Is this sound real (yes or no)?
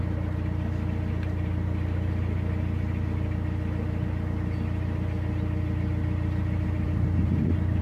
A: yes